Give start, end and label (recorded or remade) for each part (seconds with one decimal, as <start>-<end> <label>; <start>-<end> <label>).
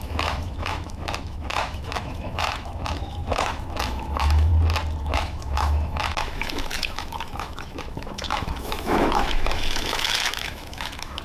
0.0-4.5 remade; 4.5-5.0 recorded; 5.0-11.2 remade